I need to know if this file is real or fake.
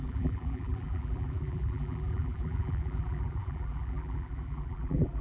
fake